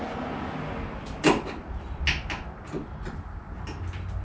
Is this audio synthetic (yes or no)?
no